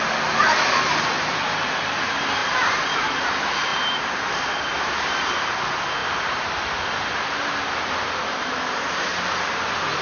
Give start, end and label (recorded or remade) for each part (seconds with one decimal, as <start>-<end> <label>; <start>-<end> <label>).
0.0-3.7 recorded; 3.7-4.9 remade; 4.9-6.0 recorded; 6.0-6.6 remade; 6.6-9.1 recorded; 9.1-9.6 remade; 9.6-10.0 recorded